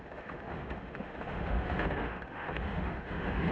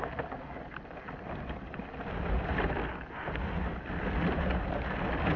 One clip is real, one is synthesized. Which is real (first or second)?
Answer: second